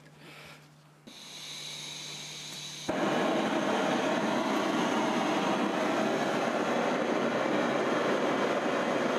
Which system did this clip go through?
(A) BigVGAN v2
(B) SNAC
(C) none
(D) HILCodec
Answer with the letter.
C